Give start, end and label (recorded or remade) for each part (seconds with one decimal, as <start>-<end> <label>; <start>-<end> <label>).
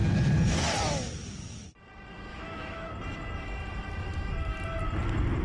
0.0-2.3 recorded; 2.3-2.9 remade; 2.9-5.4 recorded